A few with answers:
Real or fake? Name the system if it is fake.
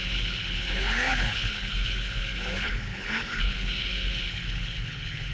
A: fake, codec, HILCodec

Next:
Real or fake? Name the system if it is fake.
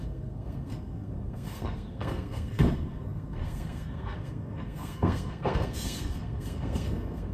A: fake, codec, SNAC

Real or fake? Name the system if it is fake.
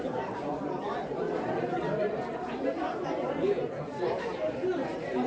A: fake, vocoder, BigVGAN v2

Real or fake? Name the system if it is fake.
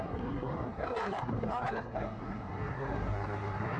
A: fake, codec, SNAC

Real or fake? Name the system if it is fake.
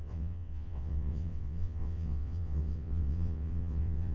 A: fake, vocoder, WaveNeXt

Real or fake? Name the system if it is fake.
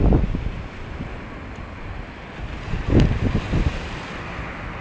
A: real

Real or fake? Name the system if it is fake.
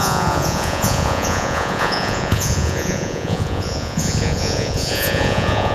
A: fake, vocoder, Vocos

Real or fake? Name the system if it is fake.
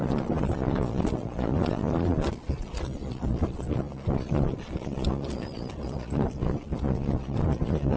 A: fake, vocoder, Vocos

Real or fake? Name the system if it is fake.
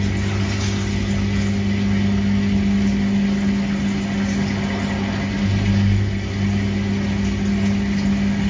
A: real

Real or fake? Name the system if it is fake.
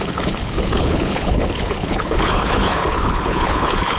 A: fake, codec, HILCodec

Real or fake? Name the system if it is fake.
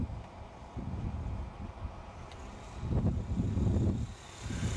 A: real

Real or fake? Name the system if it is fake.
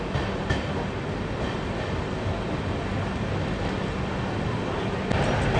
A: real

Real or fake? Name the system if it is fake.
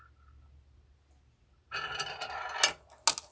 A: real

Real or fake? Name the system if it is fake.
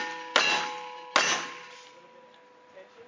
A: real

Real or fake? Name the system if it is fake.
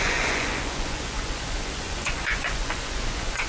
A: fake, vocoder, Vocos